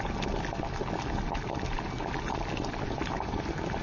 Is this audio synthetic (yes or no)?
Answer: no